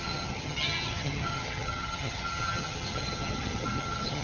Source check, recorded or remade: remade